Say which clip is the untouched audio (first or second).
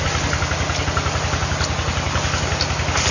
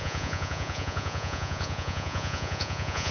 first